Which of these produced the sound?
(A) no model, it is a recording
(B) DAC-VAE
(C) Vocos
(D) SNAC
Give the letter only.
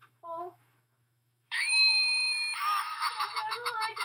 B